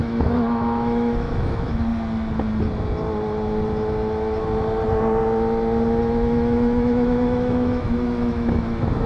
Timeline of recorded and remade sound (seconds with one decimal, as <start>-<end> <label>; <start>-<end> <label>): 0.0-1.9 remade; 1.9-6.0 recorded; 6.0-9.1 remade

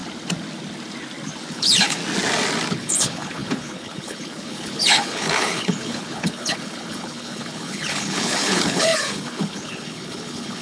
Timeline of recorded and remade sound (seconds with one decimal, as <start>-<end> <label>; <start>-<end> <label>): 0.0-1.5 recorded; 1.5-2.0 remade; 2.0-2.7 recorded; 2.7-10.6 remade

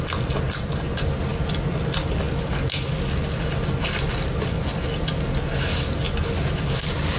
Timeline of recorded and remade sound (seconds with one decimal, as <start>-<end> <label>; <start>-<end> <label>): 0.0-7.2 recorded

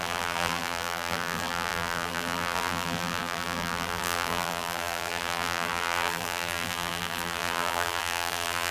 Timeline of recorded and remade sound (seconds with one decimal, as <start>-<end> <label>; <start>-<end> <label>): 0.0-8.7 remade

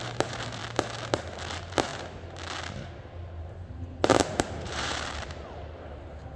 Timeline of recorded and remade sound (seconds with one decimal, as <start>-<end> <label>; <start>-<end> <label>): 0.0-0.6 remade; 0.6-1.1 recorded; 1.1-1.9 remade; 1.9-3.3 recorded; 3.3-6.4 remade

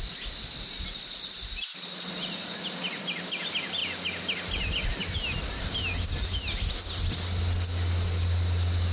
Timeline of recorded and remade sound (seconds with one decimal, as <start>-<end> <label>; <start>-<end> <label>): 0.0-8.9 recorded